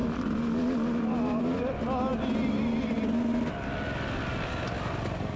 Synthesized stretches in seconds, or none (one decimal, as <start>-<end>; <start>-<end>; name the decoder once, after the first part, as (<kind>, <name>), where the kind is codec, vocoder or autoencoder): none